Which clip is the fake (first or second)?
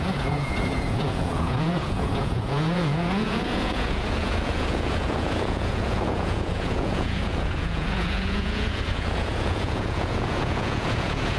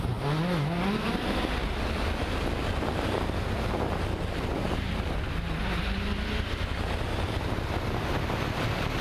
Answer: first